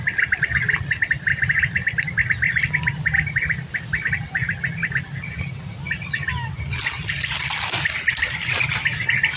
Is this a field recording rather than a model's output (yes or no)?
yes